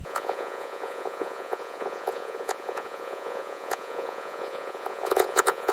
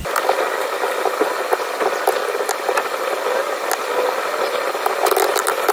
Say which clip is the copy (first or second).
first